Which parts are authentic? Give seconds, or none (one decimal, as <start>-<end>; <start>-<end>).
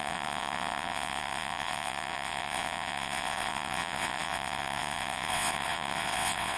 none